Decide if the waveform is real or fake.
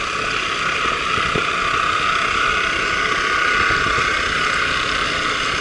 real